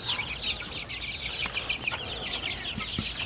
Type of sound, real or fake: real